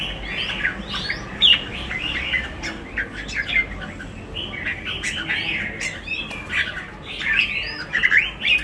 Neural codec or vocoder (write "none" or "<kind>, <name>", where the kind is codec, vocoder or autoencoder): none